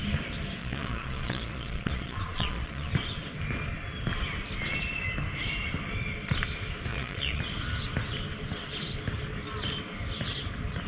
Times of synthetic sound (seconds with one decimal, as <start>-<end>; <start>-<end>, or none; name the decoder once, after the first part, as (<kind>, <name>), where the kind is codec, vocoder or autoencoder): 0.6-2.9 (vocoder, Vocos); 6.9-7.4